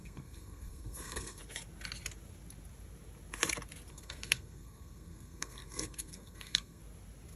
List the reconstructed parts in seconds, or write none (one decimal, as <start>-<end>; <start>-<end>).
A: 0.0-1.4; 3.9-6.8